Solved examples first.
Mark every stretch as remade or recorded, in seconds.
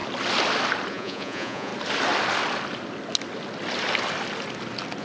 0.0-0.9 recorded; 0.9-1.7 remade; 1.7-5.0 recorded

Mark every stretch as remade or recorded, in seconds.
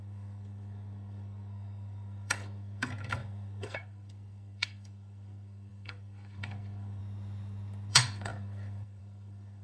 0.0-7.0 remade; 7.0-7.9 recorded; 7.9-9.6 remade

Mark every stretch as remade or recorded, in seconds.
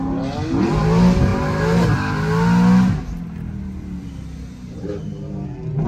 0.0-5.9 recorded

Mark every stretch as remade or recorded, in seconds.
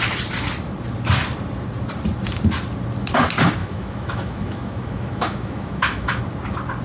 0.0-3.6 recorded; 3.6-6.2 remade; 6.2-6.8 recorded